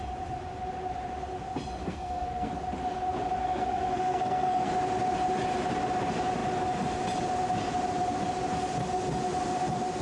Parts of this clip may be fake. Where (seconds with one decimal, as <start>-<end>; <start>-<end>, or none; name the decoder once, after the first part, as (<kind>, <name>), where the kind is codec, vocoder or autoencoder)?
1.8-2.5 (codec, SNAC); 3.4-4.7